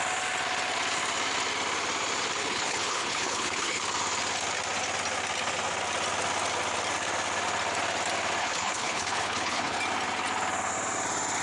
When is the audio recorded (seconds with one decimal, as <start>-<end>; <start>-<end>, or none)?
0.0-2.4; 3.8-8.4; 9.8-11.4